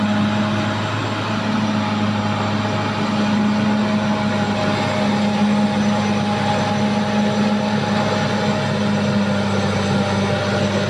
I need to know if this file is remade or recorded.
recorded